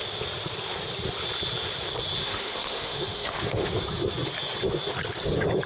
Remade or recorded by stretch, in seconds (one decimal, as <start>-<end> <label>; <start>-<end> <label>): 0.0-2.2 recorded; 2.2-3.7 remade; 3.7-5.7 recorded